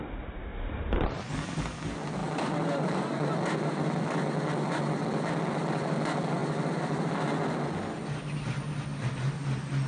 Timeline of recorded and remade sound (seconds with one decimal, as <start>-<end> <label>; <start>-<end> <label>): 0.0-0.5 recorded; 0.5-1.1 remade; 1.1-9.9 recorded